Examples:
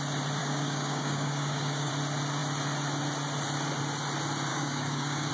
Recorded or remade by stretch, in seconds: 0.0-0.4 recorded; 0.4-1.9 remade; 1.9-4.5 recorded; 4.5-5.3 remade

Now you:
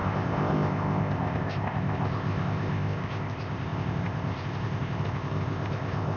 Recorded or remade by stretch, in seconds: 0.0-6.2 remade